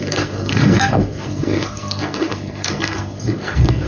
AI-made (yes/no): yes